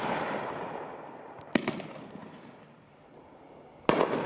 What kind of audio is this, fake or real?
real